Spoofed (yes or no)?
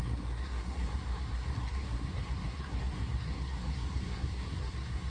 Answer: yes